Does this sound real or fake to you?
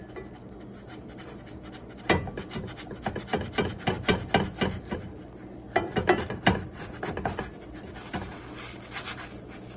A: real